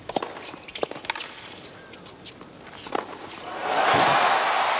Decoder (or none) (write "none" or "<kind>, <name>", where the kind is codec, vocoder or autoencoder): none